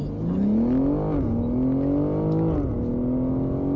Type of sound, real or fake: real